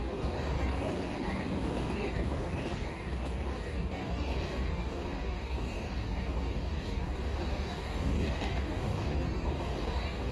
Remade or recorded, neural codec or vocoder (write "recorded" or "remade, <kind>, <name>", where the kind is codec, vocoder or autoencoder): remade, codec, DAC